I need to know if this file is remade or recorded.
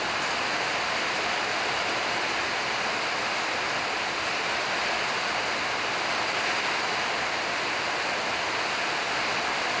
recorded